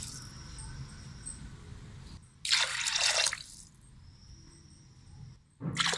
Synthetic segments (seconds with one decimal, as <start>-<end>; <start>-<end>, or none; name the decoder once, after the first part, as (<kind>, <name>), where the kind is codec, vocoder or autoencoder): none